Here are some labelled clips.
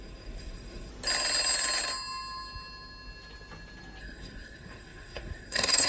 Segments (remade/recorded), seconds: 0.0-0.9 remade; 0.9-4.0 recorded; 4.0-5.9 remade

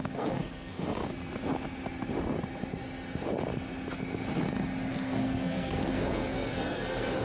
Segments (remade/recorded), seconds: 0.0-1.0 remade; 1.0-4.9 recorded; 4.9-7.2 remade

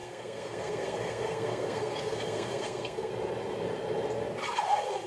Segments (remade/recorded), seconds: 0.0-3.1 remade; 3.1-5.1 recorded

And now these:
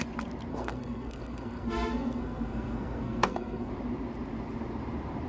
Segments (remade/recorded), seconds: 0.0-0.5 recorded; 0.5-3.7 remade; 3.7-5.3 recorded

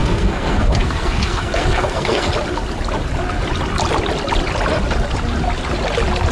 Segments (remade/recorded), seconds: 0.0-2.3 remade; 2.3-6.3 recorded

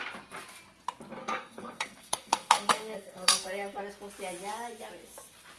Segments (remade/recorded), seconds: 0.0-1.2 recorded; 1.2-3.8 remade; 3.8-5.6 recorded

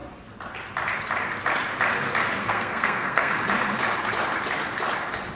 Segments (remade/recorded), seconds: 0.0-2.4 recorded; 2.4-3.3 remade; 3.3-5.3 recorded